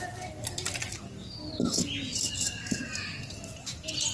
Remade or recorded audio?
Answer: recorded